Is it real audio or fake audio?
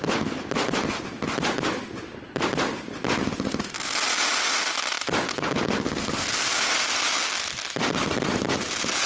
real